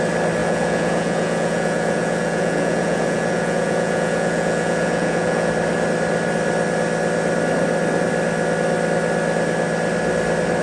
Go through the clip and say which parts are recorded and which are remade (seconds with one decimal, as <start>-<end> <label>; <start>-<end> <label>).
0.0-0.4 recorded; 0.4-5.5 remade; 5.5-10.6 recorded